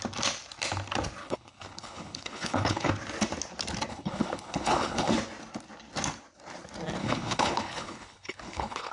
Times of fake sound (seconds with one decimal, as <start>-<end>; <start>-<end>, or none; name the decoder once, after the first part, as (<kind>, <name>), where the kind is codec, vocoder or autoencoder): 1.2-2.9 (codec, HILCodec); 3.9-5.1; 7.0-8.9